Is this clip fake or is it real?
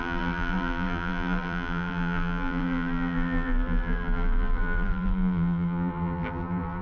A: fake